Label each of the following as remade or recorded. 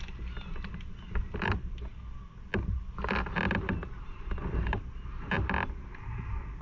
recorded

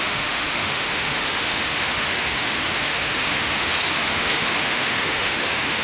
remade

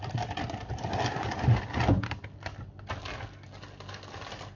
recorded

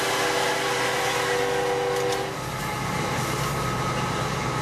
recorded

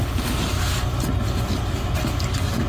recorded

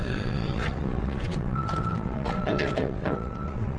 remade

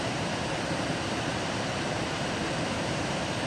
remade